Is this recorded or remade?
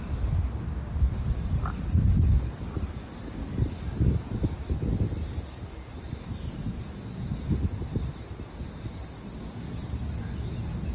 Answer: recorded